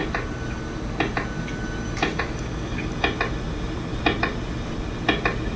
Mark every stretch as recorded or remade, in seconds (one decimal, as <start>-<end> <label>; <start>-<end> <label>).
0.0-5.6 recorded